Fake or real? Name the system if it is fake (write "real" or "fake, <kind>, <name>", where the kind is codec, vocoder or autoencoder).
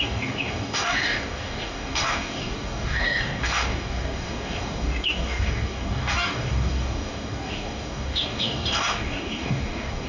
fake, codec, DAC